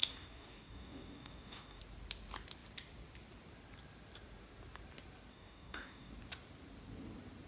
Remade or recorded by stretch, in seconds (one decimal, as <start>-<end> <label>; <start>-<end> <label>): 0.0-1.8 remade; 1.8-5.3 recorded; 5.3-6.1 remade; 6.1-7.5 recorded